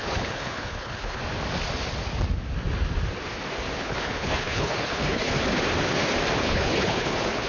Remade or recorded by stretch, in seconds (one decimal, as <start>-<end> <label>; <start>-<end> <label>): 0.0-1.2 remade; 1.2-3.8 recorded; 3.8-5.3 remade; 5.3-6.4 recorded; 6.4-7.5 remade